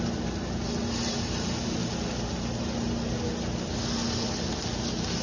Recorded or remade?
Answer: recorded